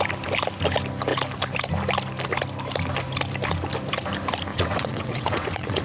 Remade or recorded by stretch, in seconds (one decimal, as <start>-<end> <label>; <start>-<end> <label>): 0.0-4.5 recorded; 4.5-5.8 remade